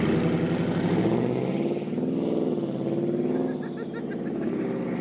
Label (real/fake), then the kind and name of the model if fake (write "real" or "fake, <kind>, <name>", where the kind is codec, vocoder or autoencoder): real